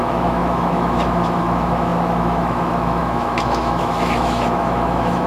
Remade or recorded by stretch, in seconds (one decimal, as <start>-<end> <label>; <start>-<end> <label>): 0.0-5.3 remade